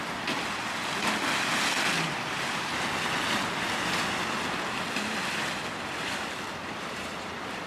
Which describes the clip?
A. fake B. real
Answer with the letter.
B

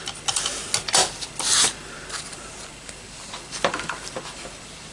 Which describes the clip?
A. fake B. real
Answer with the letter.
B